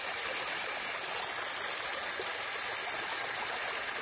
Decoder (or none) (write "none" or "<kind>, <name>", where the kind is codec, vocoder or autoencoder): none